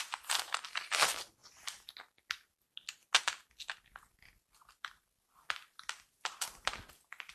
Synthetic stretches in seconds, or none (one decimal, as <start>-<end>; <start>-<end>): none